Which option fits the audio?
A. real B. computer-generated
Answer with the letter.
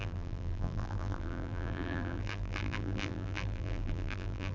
B